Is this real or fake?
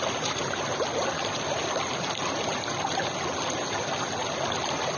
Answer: real